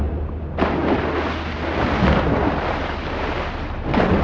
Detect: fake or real real